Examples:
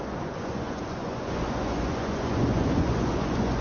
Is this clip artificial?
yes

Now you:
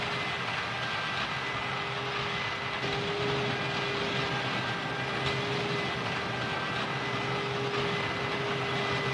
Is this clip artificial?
no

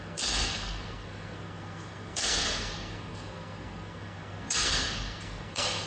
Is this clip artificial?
yes